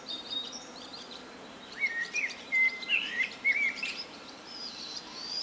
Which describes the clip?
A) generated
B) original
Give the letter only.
A